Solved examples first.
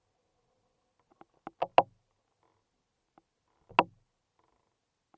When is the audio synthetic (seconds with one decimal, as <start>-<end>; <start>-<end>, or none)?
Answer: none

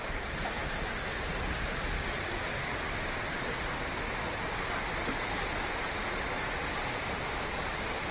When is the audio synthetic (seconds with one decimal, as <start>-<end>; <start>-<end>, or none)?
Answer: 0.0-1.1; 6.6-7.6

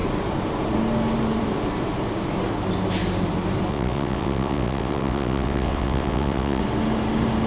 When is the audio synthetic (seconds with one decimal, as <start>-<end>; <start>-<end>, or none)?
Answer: 3.7-6.6

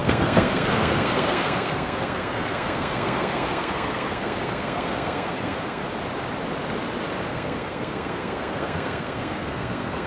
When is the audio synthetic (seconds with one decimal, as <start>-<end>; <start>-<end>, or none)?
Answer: 0.0-5.8; 7.3-10.1

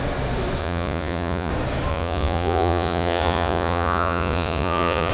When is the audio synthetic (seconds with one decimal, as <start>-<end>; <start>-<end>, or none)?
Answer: 0.6-1.5; 1.9-5.1

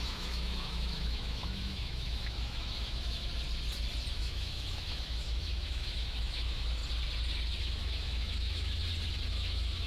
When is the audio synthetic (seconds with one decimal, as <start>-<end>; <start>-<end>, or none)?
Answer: 0.0-3.2; 4.1-6.8; 7.6-8.8; 9.3-9.9

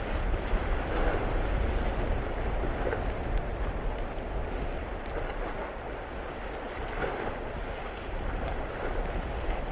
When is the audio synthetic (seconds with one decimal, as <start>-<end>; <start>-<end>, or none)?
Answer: none